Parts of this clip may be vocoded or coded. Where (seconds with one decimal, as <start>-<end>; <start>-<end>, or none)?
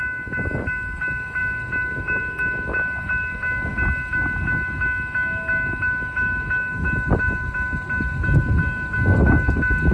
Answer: none